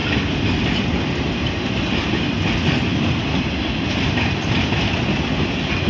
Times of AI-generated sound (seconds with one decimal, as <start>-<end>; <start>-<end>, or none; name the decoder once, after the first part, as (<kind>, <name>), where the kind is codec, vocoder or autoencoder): none